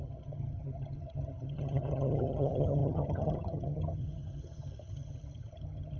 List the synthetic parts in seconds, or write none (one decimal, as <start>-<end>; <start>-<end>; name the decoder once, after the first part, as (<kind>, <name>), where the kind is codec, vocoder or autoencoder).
0.0-6.0 (vocoder, HiFi-GAN)